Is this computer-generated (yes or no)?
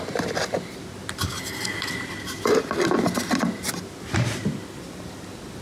no